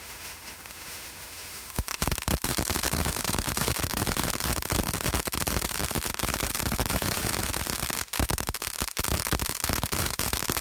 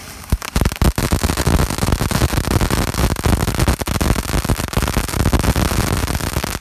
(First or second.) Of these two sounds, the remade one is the first